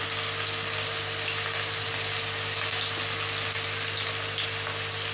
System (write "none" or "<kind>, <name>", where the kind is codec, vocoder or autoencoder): none